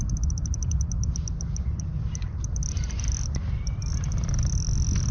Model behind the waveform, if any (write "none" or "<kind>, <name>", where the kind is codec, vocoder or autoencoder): none